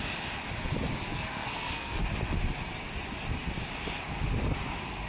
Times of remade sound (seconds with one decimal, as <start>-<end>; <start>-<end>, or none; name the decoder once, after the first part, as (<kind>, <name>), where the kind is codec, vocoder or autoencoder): 1.1-2.0 (codec, SNAC)